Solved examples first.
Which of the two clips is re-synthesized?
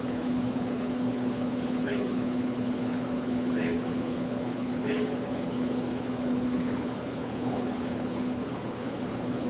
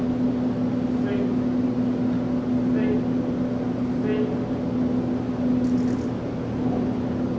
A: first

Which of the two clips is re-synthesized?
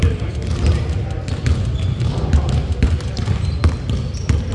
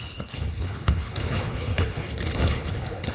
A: second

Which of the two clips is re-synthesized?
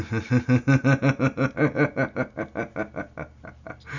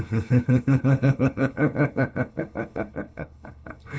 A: second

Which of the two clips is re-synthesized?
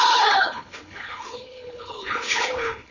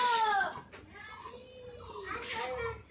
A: first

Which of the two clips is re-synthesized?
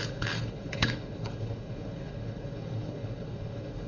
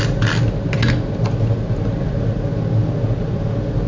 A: first